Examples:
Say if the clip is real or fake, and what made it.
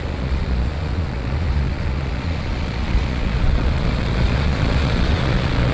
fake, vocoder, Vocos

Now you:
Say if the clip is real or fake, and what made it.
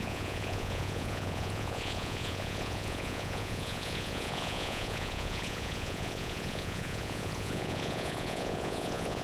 fake, vocoder, Vocos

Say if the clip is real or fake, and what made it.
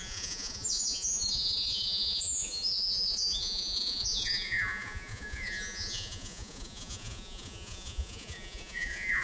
fake, vocoder, Vocos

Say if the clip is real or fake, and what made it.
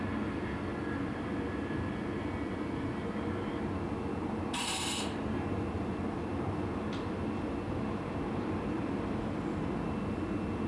real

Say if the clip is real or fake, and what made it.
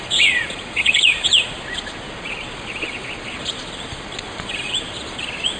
fake, vocoder, Vocos